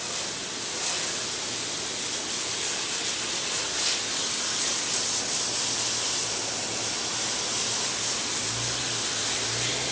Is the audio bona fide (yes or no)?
yes